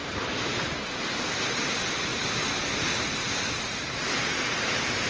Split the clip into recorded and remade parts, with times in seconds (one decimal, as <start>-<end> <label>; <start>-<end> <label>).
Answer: 0.0-2.1 remade; 2.1-3.6 recorded; 3.6-5.1 remade

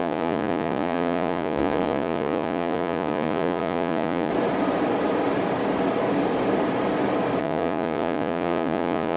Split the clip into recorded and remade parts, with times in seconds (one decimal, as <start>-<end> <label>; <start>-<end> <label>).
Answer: 0.0-4.3 remade; 4.3-7.4 recorded; 7.4-9.2 remade

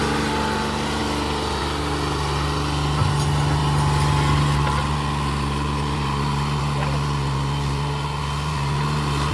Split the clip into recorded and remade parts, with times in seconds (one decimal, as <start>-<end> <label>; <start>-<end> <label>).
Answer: 0.0-9.3 recorded

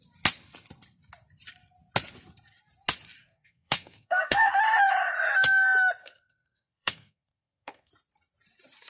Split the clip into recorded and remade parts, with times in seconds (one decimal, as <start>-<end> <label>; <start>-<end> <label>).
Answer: 0.0-3.2 recorded; 3.2-4.6 remade; 4.6-6.0 recorded; 6.0-7.9 remade; 7.9-8.9 recorded

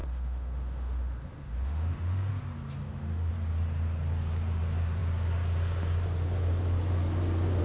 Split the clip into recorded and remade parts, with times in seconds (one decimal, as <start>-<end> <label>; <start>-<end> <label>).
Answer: 0.0-2.3 remade; 2.3-2.8 recorded; 2.8-3.3 remade; 3.3-7.6 recorded

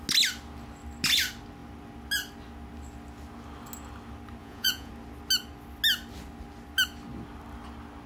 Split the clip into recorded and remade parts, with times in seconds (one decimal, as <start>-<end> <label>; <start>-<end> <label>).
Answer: 0.0-4.4 recorded; 4.4-4.9 remade; 4.9-8.1 recorded